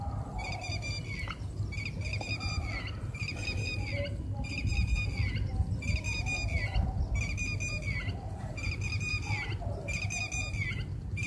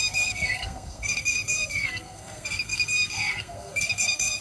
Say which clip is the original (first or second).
first